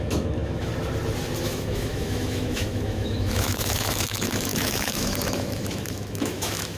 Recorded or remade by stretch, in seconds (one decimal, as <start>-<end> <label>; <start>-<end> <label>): 0.0-0.7 remade; 0.7-1.4 recorded; 1.4-6.8 remade